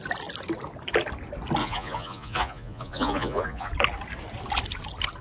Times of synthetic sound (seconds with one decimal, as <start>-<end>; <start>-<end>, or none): 1.6-3.7

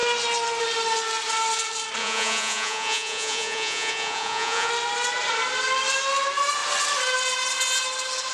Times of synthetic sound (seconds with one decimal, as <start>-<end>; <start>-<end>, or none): 2.0-4.7

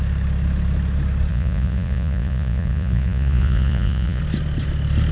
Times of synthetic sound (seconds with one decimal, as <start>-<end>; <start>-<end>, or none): 1.3-4.2